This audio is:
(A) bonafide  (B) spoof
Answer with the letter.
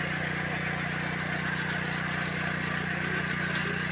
A